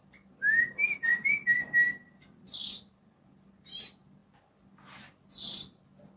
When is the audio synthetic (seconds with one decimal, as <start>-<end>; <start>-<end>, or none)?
none